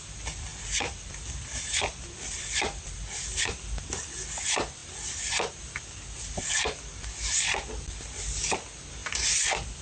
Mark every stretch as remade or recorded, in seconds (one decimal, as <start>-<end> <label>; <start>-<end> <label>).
0.0-4.8 remade; 4.8-6.4 recorded; 6.4-9.8 remade